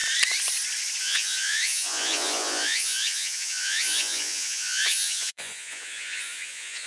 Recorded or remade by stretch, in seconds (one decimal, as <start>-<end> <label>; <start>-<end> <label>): 0.0-1.0 recorded; 1.0-6.9 remade